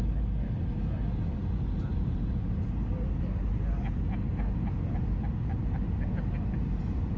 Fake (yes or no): no